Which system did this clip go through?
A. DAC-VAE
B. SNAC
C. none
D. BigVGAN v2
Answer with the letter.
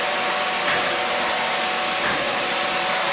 C